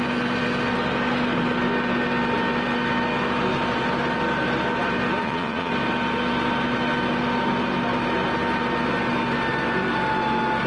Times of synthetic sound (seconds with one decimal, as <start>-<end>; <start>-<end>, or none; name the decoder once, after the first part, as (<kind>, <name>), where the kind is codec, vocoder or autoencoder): 5.2-5.7 (vocoder, Vocos)